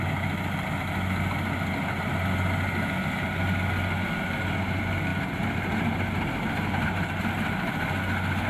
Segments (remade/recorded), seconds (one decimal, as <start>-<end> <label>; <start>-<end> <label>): 0.0-8.5 recorded